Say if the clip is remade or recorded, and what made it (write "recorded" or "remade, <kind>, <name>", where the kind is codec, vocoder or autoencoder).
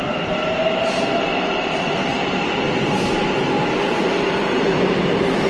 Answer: recorded